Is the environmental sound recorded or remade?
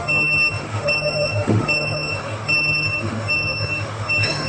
remade